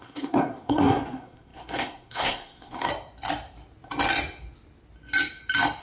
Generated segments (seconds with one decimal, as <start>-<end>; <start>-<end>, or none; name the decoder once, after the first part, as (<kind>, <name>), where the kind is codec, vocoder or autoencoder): 0.0-2.9 (codec, SNAC)